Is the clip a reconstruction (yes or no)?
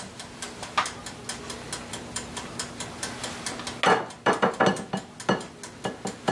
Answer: no